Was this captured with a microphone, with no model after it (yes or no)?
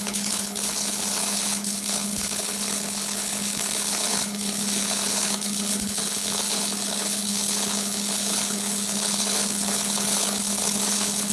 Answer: no